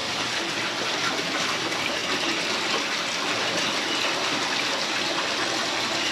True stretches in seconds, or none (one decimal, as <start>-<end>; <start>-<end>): 0.0-6.1